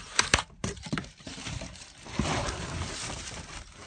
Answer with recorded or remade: remade